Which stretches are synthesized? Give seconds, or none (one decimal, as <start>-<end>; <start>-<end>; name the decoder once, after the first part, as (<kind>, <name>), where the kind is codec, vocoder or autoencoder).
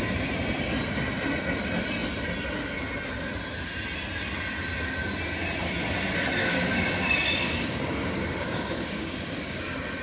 6.4-10.0 (codec, DAC)